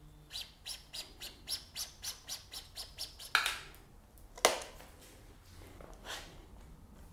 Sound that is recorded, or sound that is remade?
recorded